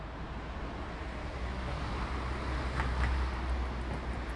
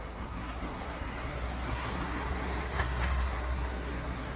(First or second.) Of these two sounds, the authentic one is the first